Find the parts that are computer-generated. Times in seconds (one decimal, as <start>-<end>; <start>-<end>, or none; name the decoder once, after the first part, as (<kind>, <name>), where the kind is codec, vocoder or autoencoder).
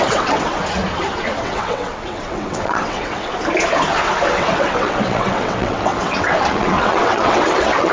0.0-0.6 (vocoder, WaveNeXt); 1.4-3.3; 4.3-7.9